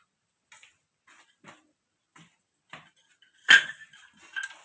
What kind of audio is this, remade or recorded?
recorded